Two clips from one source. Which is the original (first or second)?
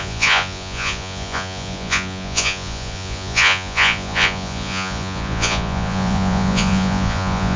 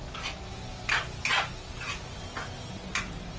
second